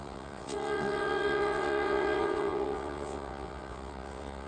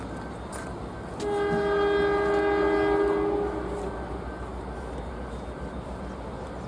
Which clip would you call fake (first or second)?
first